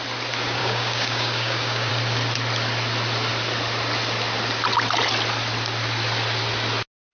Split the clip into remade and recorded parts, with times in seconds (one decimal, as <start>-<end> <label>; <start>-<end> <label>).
0.0-0.6 recorded; 0.6-1.9 remade; 1.9-7.1 recorded